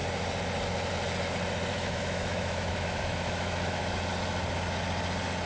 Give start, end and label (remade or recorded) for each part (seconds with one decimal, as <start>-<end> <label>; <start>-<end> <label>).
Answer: 0.0-1.7 recorded; 1.7-3.8 remade; 3.8-5.5 recorded